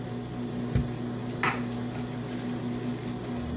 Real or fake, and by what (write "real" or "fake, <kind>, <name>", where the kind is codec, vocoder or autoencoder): real